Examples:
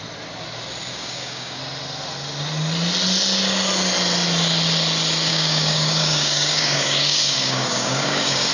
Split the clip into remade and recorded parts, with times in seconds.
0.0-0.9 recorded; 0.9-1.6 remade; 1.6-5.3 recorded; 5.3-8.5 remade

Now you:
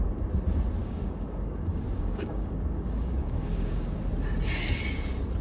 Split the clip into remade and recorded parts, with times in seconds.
0.0-0.8 recorded; 0.8-4.0 remade; 4.0-5.4 recorded

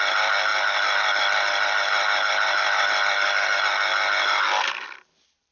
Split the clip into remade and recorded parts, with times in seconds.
0.0-5.5 recorded

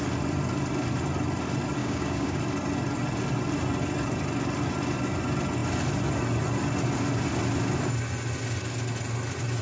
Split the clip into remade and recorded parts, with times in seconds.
0.0-1.8 recorded; 1.8-2.4 remade; 2.4-9.6 recorded